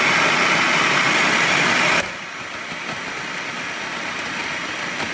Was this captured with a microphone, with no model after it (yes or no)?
yes